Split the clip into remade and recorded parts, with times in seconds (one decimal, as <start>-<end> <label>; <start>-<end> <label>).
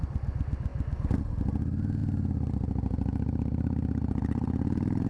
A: 0.0-2.0 recorded; 2.0-5.1 remade